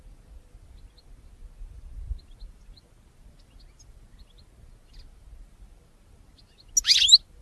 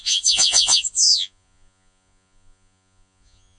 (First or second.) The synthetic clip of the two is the second